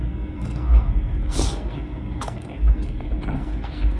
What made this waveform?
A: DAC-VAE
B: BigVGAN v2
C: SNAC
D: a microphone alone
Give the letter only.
C